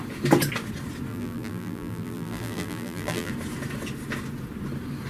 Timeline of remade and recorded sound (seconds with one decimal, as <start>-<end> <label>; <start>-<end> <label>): 0.0-1.1 recorded; 1.1-3.3 remade; 3.3-5.1 recorded